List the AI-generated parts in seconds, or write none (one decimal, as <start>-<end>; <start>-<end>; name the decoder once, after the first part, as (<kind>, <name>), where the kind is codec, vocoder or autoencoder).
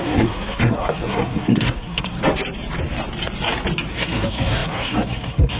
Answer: 0.0-2.2 (codec, SNAC); 3.9-5.6